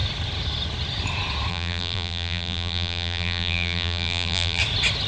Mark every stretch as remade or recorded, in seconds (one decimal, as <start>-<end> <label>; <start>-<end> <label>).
0.0-1.5 recorded; 1.5-4.6 remade; 4.6-5.1 recorded